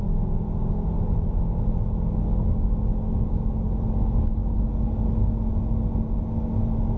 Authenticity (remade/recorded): recorded